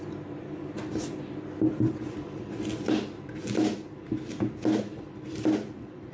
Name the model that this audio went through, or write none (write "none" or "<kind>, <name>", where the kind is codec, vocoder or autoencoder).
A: vocoder, BigVGAN v2